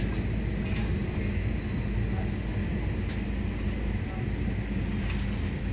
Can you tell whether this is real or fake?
real